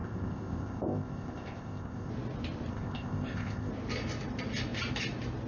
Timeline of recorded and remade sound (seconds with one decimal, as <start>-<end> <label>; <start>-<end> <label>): 0.0-2.1 remade; 2.1-2.7 recorded; 2.7-3.7 remade; 3.7-5.5 recorded